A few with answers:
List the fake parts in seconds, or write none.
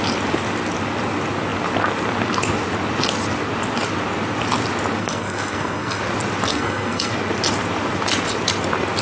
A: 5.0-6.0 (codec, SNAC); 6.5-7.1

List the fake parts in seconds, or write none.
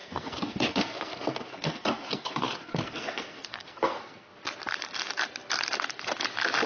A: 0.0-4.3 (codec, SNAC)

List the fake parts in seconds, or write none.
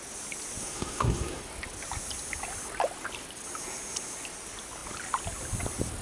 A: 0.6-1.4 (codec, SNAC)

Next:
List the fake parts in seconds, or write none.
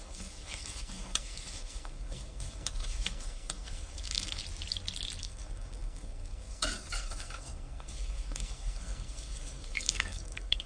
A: 0.0-4.4 (codec, SNAC); 5.2-10.7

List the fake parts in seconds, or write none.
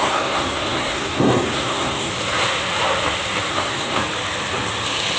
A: 0.0-2.1 (codec, SNAC); 3.5-4.0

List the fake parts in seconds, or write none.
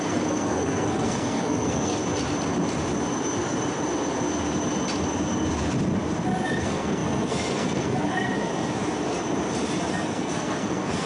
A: 0.0-2.0 (codec, SNAC); 6.6-8.5; 9.9-11.1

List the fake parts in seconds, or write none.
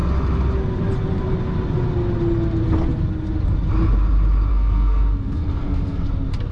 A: 4.5-6.1 (codec, SNAC)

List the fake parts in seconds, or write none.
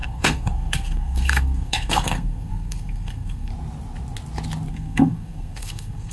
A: 0.0-3.5 (codec, SNAC); 4.7-6.1